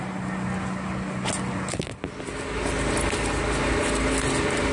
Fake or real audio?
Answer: real